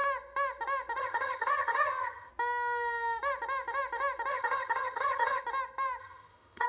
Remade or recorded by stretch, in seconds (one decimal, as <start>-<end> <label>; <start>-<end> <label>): 0.0-1.0 recorded; 1.0-2.3 remade; 2.3-4.3 recorded; 4.3-5.4 remade; 5.4-6.0 recorded; 6.0-6.7 remade